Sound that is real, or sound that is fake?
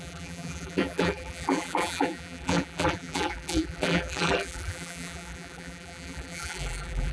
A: fake